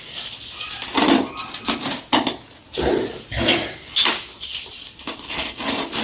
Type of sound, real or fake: fake